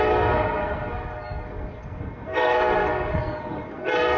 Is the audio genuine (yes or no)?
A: no